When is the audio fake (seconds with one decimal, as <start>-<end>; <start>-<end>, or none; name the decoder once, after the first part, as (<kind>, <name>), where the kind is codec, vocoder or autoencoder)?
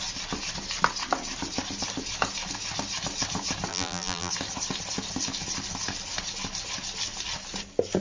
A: 3.7-4.3 (vocoder, BigVGAN v2)